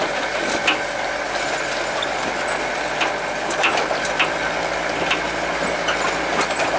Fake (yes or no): no